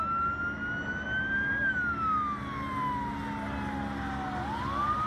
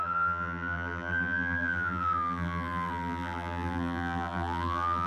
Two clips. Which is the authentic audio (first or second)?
first